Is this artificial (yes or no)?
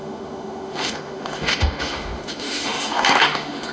yes